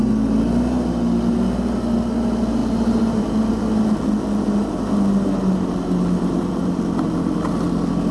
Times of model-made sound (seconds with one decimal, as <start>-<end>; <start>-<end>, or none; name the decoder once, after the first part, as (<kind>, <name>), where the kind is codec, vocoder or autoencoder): none